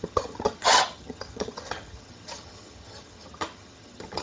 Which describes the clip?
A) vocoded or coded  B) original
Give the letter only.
A